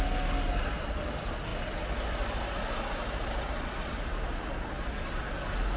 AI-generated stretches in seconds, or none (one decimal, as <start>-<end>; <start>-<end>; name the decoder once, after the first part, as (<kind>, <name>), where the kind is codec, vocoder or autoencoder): none